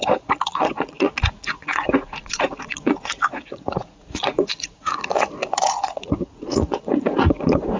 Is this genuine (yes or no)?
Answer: no